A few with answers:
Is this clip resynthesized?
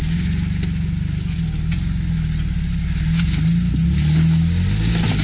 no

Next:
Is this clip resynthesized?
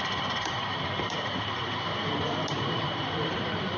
yes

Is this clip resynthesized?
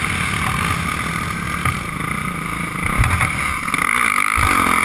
no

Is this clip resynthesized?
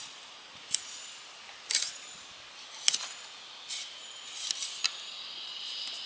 no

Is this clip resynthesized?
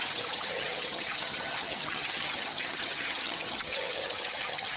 yes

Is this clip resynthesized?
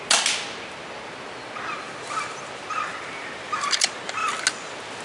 no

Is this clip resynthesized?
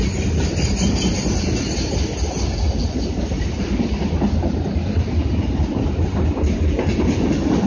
no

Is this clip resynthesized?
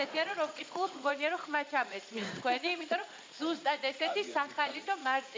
yes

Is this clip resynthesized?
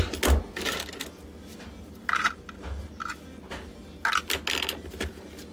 no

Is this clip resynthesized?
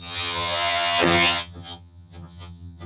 yes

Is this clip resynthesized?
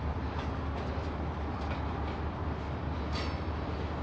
no